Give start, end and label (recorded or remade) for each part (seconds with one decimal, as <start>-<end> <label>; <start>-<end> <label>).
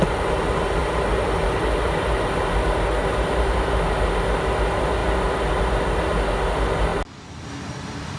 0.0-8.2 recorded